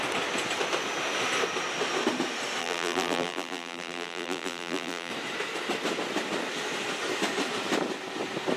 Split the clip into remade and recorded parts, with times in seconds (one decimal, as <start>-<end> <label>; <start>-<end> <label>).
0.0-2.6 recorded; 2.6-5.1 remade; 5.1-8.6 recorded